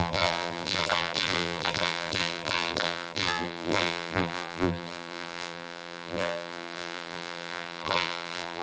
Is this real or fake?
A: fake